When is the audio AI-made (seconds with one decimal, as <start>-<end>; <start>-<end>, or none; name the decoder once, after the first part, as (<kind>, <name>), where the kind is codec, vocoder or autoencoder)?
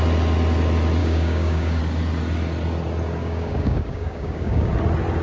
1.0-1.8 (codec, DAC); 3.2-4.7